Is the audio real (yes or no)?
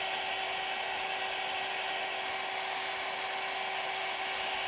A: yes